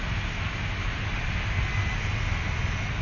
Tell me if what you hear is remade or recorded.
recorded